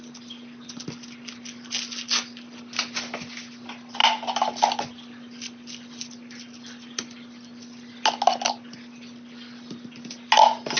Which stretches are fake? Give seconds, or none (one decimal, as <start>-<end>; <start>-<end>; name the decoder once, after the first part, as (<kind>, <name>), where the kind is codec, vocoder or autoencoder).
none